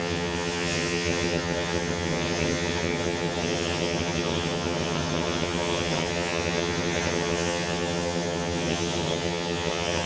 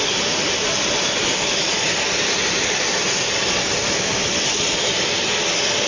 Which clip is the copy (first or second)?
first